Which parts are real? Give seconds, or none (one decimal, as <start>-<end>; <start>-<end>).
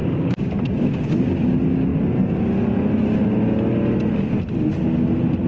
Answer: 0.5-5.5